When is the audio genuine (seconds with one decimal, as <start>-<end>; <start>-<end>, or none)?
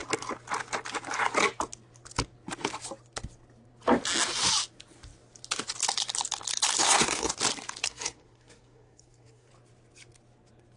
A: 0.0-6.8; 7.3-7.8; 9.5-10.8